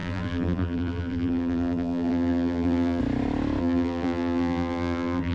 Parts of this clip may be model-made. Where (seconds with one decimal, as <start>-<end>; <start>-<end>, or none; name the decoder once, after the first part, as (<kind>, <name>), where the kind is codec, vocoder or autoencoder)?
0.0-3.0 (vocoder, BigVGAN v2); 3.6-5.3